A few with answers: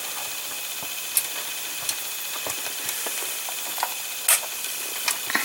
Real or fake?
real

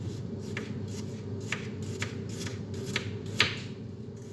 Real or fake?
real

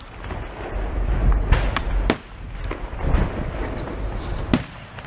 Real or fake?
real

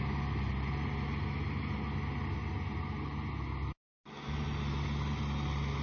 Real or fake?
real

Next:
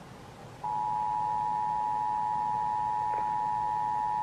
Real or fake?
real